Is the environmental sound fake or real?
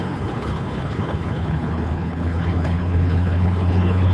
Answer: fake